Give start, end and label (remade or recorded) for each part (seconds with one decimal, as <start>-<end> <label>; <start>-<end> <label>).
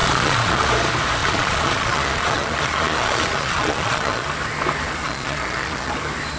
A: 0.0-0.7 remade; 0.7-1.2 recorded; 1.2-4.3 remade; 4.3-5.0 recorded; 5.0-5.9 remade; 5.9-6.4 recorded